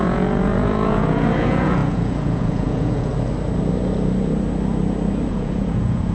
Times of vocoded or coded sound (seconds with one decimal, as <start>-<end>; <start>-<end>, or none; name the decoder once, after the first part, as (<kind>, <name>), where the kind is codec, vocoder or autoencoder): 0.0-3.1 (vocoder, Vocos); 5.3-6.1